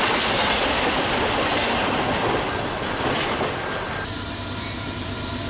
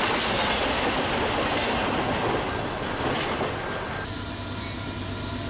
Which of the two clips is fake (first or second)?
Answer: first